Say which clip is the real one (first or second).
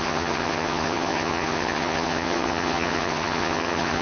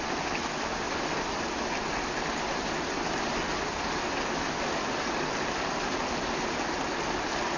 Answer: second